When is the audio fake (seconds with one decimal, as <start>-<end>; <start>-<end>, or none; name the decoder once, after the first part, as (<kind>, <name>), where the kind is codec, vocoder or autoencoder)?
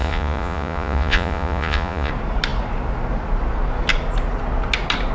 0.0-2.1 (vocoder, Vocos)